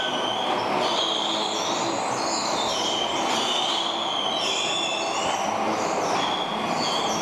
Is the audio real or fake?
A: real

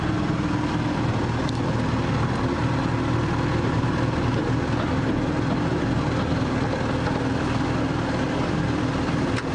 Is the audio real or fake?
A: real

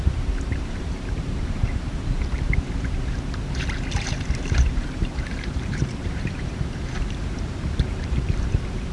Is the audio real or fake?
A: fake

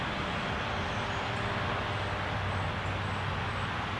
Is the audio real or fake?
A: real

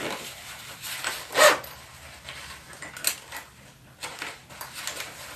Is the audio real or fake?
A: real